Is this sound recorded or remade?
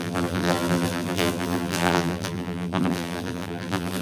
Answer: remade